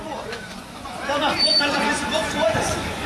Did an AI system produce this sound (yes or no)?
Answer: yes